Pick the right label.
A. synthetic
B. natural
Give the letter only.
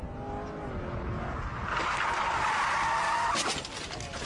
B